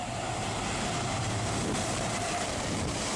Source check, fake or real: fake